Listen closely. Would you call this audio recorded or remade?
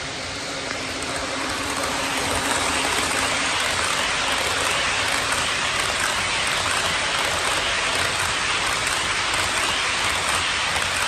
recorded